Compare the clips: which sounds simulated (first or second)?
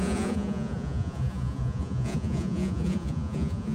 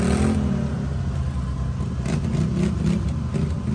first